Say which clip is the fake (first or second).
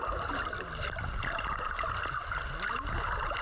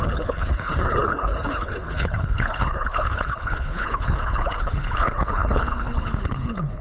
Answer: second